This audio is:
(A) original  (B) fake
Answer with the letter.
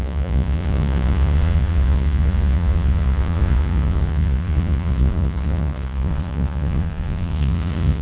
B